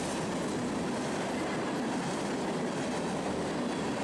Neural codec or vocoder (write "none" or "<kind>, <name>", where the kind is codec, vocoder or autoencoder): none